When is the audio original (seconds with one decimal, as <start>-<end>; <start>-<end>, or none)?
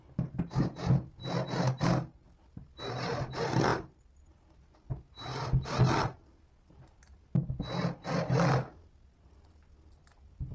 0.0-3.7; 4.3-10.5